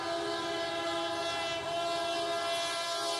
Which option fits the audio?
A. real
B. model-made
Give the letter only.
A